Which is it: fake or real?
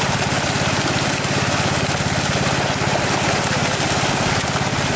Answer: real